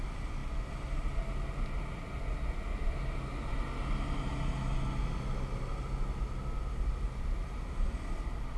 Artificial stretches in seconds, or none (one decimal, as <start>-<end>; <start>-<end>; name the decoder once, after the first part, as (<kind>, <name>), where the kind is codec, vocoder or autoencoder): none